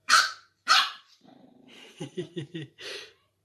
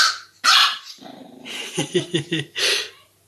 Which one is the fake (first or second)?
first